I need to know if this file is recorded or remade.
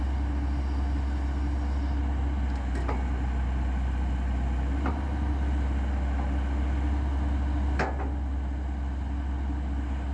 recorded